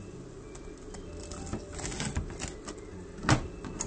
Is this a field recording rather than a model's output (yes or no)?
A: yes